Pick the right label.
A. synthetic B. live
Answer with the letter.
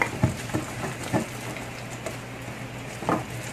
B